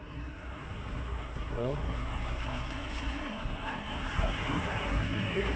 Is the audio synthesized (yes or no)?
yes